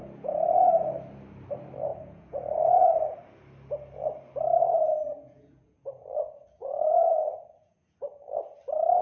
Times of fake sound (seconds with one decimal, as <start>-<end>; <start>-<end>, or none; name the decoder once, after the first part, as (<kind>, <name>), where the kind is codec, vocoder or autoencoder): 0.0-0.7 (vocoder, Vocos); 1.9-3.2; 4.9-6.0; 6.6-8.0